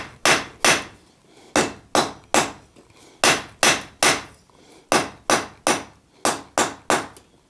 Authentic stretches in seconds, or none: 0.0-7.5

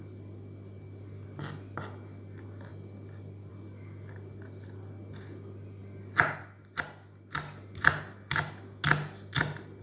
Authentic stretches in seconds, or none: 0.0-9.8